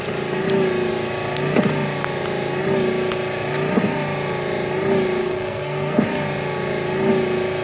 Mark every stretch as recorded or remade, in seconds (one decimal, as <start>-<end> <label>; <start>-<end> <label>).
0.0-5.2 recorded; 5.2-6.0 remade; 6.0-7.6 recorded